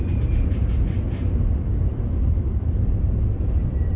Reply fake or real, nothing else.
real